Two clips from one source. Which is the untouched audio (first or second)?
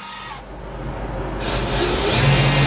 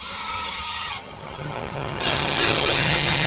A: first